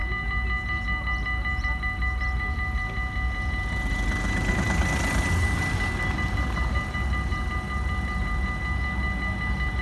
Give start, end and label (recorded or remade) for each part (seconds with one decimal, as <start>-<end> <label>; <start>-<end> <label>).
0.0-9.8 recorded